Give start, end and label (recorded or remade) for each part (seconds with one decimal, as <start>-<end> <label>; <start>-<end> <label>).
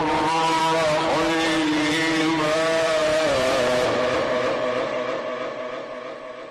0.0-0.6 remade; 0.6-2.2 recorded; 2.2-6.5 remade